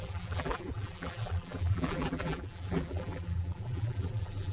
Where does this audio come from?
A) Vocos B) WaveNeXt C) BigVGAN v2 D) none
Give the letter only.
C